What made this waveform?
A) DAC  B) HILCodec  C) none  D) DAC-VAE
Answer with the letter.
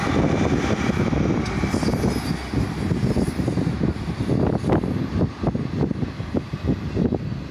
C